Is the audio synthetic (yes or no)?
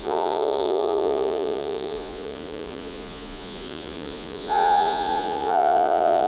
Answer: yes